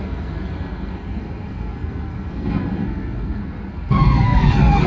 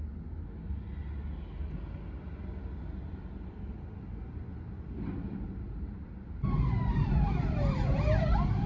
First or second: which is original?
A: second